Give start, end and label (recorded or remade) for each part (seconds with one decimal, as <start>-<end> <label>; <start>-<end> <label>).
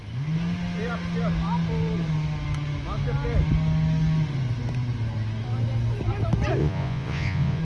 0.0-6.6 recorded; 6.6-7.6 remade